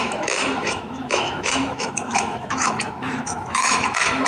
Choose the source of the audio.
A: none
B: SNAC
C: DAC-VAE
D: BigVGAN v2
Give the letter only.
C